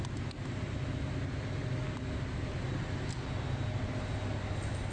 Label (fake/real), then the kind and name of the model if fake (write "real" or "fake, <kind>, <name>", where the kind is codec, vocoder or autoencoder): real